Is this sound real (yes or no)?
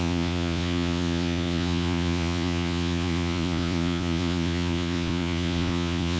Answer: no